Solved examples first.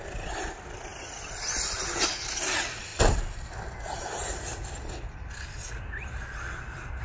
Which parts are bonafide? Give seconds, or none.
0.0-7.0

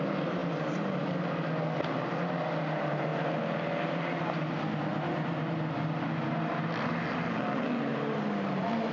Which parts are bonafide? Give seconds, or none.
0.0-8.9

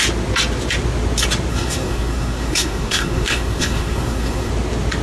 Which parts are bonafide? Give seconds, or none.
0.0-1.5; 4.5-5.0

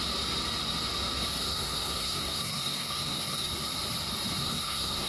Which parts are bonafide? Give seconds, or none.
0.0-1.4; 3.5-4.4